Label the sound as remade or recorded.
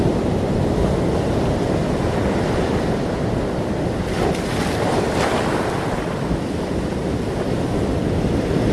remade